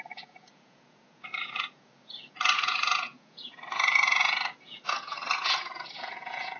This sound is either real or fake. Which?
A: fake